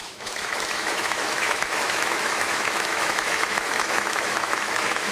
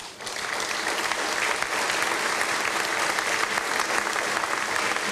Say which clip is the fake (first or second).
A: first